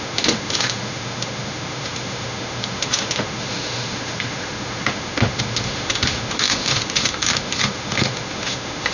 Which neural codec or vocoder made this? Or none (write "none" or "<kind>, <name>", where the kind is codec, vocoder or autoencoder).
autoencoder, DAC-VAE